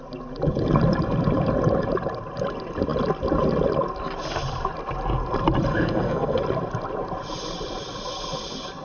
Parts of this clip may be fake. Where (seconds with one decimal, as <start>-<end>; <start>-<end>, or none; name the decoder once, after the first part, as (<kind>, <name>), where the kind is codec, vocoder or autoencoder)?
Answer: 5.7-6.4 (codec, SNAC)